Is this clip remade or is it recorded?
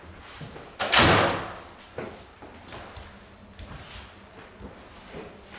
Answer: recorded